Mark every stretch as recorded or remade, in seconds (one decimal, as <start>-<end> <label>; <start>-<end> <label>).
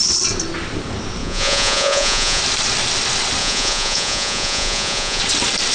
0.0-1.2 recorded; 1.2-2.4 remade; 2.4-3.4 recorded; 3.4-5.2 remade; 5.2-5.7 recorded